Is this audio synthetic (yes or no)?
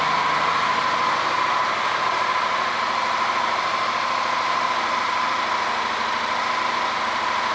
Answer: no